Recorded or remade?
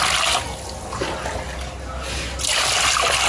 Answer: recorded